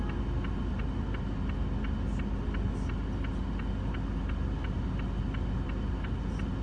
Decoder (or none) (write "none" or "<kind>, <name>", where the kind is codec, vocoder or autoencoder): none